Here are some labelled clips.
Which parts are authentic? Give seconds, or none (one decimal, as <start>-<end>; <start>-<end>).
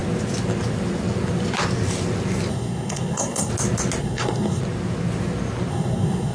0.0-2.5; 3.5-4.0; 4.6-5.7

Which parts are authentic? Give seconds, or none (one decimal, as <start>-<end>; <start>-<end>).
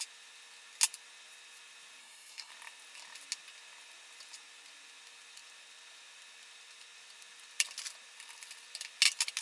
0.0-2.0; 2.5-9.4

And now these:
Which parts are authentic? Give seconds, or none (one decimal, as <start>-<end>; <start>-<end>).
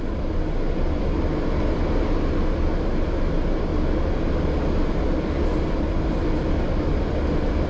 0.0-7.7